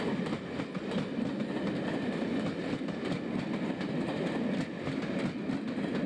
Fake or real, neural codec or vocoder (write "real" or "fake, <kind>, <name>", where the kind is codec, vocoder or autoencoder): real